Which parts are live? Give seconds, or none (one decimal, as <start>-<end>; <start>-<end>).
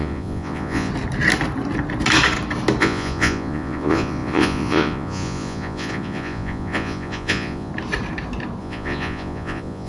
0.9-2.8; 7.7-8.6